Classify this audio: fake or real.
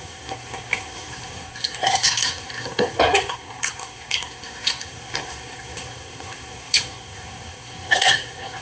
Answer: fake